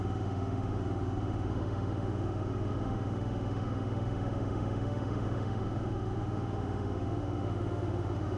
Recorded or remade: remade